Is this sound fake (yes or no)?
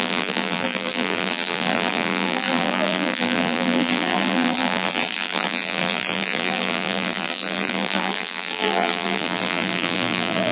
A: yes